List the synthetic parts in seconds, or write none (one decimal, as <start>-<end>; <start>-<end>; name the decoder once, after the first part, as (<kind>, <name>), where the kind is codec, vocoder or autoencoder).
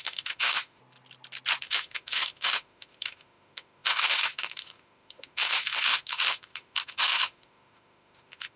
0.0-0.8 (autoencoder, DAC-VAE); 1.6-8.6